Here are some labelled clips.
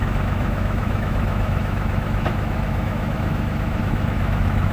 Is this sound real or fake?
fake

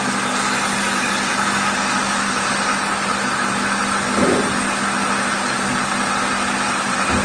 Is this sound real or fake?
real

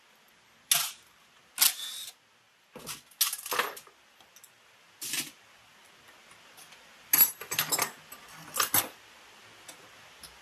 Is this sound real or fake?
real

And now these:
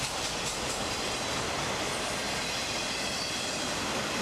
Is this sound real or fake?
real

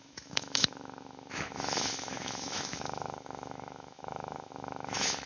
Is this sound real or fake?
fake